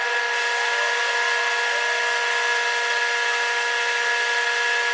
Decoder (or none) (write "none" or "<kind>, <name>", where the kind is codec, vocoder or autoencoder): none